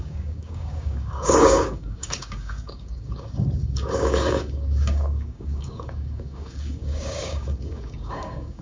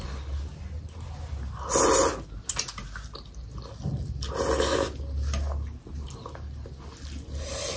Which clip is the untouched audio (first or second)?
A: second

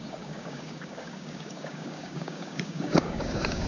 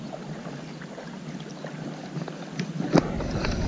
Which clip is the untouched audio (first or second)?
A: second